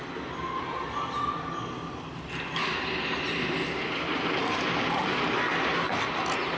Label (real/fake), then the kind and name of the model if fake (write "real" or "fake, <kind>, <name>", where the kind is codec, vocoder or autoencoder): real